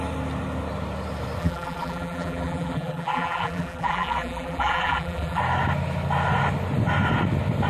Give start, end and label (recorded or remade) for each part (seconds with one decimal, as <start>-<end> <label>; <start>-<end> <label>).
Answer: 0.0-1.4 recorded; 1.4-5.4 remade; 5.4-7.7 recorded